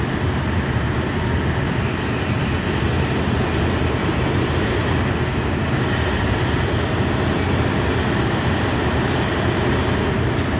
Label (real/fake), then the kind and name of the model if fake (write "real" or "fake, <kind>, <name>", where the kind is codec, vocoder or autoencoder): real